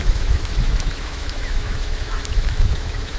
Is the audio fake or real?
fake